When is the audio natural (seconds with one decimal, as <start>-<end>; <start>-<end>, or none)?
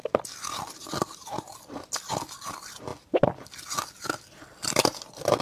0.0-0.6; 1.2-1.7; 2.9-3.9